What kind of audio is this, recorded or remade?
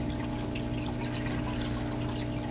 recorded